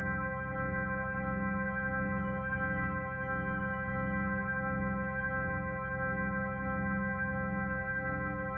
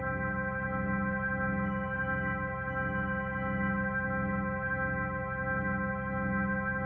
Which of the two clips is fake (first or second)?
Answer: first